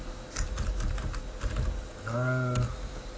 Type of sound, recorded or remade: recorded